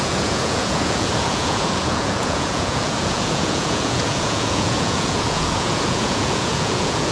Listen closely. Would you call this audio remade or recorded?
remade